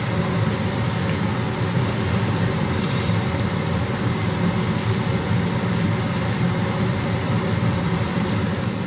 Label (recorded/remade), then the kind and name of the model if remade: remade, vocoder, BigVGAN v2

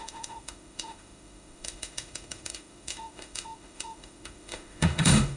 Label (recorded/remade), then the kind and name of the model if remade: remade, autoencoder, DAC-VAE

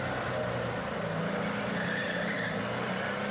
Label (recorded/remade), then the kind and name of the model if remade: recorded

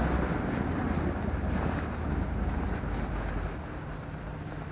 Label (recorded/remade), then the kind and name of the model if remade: recorded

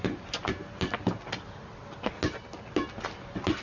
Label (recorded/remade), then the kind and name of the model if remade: recorded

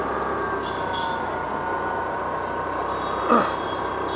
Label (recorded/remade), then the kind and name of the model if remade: recorded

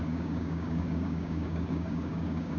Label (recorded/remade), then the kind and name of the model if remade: remade, codec, DAC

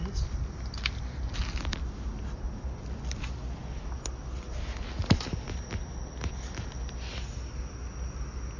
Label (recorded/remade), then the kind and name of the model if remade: recorded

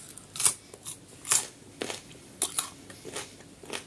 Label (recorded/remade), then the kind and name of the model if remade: recorded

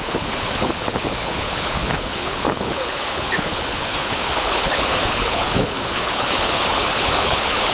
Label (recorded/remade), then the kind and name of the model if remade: remade, codec, HILCodec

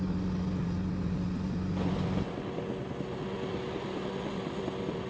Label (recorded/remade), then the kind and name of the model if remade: recorded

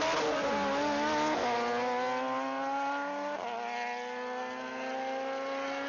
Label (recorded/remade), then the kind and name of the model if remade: recorded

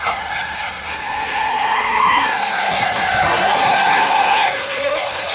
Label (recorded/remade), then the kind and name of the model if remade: remade, codec, SNAC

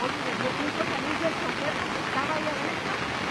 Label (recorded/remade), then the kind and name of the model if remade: recorded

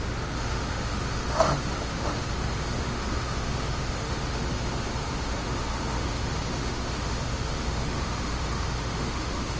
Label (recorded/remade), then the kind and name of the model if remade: remade, autoencoder, DAC-VAE